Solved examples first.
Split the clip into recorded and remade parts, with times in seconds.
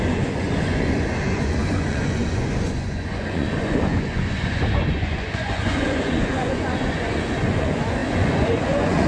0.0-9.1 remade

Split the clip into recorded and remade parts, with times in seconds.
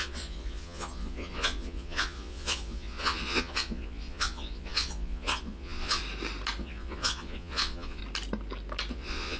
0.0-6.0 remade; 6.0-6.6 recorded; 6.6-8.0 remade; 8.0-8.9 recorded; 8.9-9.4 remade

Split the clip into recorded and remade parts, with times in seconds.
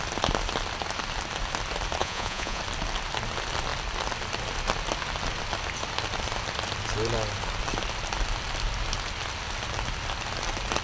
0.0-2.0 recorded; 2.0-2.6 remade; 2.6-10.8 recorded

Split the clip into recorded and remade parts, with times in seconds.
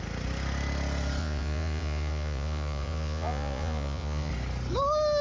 0.0-1.2 recorded; 1.2-4.3 remade; 4.3-5.2 recorded